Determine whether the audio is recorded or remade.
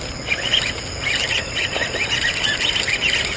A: recorded